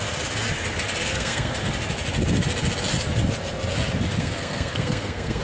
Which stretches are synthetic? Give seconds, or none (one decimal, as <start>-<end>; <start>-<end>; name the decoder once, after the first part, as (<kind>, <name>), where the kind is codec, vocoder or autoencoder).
1.0-1.5 (codec, SNAC); 4.2-5.4